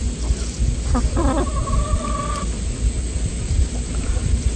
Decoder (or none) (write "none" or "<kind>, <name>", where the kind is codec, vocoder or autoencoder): none